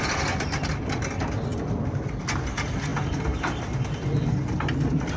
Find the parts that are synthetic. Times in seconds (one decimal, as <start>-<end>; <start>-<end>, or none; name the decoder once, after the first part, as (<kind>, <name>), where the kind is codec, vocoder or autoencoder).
1.5-2.2 (vocoder, BigVGAN v2)